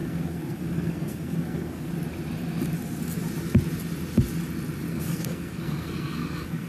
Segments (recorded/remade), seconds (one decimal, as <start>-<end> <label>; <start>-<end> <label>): 0.0-1.9 remade; 1.9-4.9 recorded; 4.9-6.7 remade

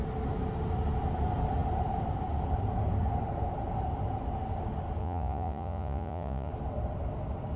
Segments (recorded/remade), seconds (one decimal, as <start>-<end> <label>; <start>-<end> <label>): 0.0-5.0 recorded; 5.0-6.5 remade; 6.5-7.6 recorded

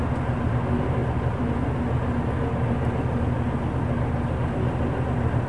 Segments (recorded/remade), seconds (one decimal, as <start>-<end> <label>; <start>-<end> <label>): 0.0-5.5 recorded

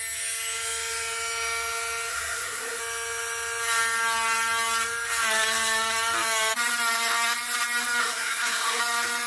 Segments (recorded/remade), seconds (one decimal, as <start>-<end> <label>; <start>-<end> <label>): 0.0-2.1 recorded; 2.1-2.8 remade; 2.8-8.0 recorded; 8.0-8.8 remade; 8.8-9.3 recorded

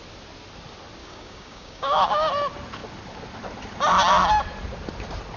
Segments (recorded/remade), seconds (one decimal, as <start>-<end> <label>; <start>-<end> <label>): 0.0-1.0 recorded; 1.0-2.3 remade; 2.3-5.4 recorded

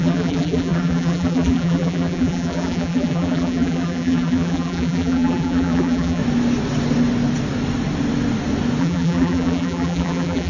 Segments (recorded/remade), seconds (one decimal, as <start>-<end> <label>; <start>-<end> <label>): 0.0-6.2 remade; 6.2-8.8 recorded; 8.8-10.5 remade